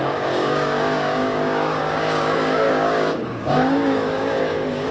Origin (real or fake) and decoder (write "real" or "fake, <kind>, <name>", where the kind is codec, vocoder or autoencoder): fake, codec, DAC